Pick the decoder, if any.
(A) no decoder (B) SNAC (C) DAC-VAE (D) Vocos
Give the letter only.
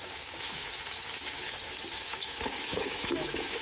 C